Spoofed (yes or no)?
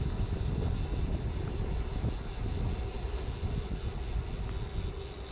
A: no